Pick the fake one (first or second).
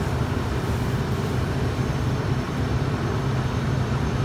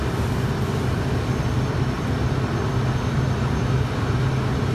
first